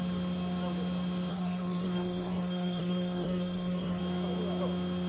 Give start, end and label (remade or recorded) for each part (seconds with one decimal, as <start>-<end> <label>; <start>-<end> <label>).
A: 0.0-1.3 recorded; 1.3-4.0 remade; 4.0-5.1 recorded

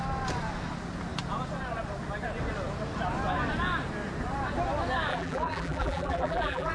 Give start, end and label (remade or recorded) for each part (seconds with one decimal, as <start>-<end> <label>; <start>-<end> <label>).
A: 0.0-5.1 recorded; 5.1-6.7 remade

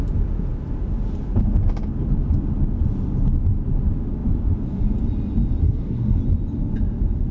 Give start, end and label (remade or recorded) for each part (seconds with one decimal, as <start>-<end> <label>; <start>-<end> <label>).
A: 0.0-5.6 recorded; 5.6-6.2 remade; 6.2-7.3 recorded

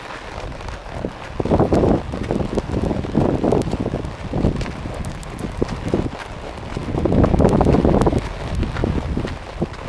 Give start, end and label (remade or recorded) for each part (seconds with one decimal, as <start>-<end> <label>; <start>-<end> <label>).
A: 0.0-9.9 recorded

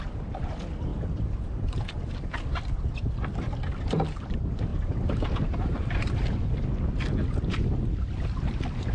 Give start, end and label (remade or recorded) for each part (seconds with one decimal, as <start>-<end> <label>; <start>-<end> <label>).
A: 0.0-0.9 recorded; 0.9-1.9 remade; 1.9-4.7 recorded; 4.7-6.6 remade; 6.6-8.9 recorded

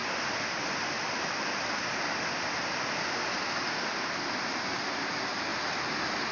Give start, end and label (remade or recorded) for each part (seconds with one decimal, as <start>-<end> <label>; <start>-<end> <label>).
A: 0.0-6.3 recorded

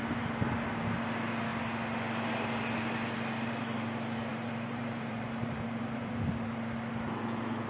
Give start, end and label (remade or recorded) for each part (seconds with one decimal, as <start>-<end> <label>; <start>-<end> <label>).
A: 0.0-4.3 recorded; 4.3-6.3 remade; 6.3-7.7 recorded

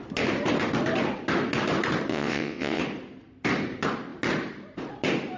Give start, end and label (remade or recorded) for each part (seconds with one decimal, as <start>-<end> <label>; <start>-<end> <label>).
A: 0.0-2.1 recorded; 2.1-2.8 remade; 2.8-5.4 recorded